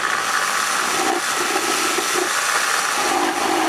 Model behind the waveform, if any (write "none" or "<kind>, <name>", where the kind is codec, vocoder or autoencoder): none